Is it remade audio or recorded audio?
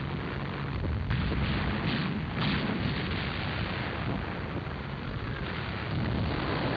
recorded